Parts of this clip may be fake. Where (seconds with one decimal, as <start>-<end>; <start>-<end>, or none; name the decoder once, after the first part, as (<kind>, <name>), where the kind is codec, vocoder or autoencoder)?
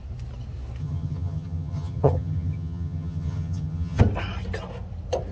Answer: 0.8-4.0 (vocoder, HiFi-GAN)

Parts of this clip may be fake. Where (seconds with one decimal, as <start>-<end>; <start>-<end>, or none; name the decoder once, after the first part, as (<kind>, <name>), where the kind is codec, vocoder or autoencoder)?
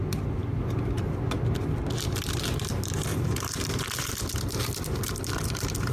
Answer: 3.1-4.2 (vocoder, BigVGAN v2)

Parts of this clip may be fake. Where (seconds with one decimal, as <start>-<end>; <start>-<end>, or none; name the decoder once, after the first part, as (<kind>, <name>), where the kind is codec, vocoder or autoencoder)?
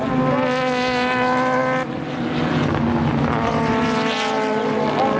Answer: none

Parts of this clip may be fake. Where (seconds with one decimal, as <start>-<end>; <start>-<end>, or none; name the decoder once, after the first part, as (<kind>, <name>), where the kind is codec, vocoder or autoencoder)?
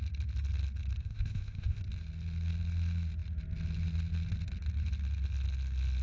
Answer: 1.0-1.8 (codec, ZipCodec)